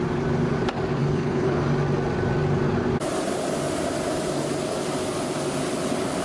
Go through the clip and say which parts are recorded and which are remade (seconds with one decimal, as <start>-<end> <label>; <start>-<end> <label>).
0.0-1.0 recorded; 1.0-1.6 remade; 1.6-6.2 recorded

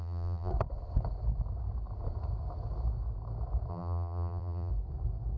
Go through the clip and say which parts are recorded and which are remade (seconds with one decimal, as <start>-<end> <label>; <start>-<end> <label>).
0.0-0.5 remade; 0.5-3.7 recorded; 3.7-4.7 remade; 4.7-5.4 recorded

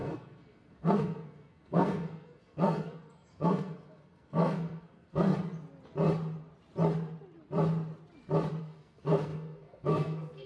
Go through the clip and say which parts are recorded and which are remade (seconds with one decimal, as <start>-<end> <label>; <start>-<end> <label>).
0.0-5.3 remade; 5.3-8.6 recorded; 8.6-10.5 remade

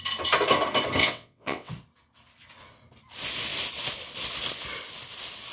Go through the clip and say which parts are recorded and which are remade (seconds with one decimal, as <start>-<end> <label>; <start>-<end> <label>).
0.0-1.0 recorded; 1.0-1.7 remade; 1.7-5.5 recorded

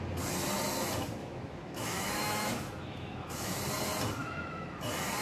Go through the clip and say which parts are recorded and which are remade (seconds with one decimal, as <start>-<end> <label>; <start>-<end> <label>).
0.0-1.2 recorded; 1.2-3.6 remade; 3.6-4.2 recorded; 4.2-4.8 remade; 4.8-5.2 recorded

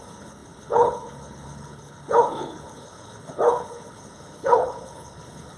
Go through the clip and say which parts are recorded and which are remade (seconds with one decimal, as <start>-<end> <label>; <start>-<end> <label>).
0.0-5.6 remade